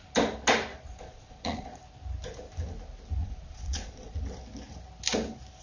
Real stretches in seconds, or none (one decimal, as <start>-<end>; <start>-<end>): 0.0-0.7; 1.8-3.2; 4.2-5.6